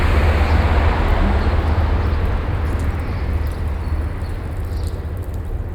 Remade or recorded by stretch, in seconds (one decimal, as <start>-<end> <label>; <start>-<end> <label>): 0.0-5.7 recorded